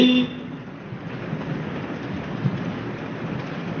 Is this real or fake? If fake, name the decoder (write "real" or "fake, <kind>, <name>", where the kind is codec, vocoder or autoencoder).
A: real